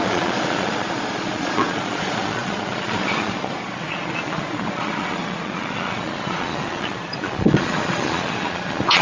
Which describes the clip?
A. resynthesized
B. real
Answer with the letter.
A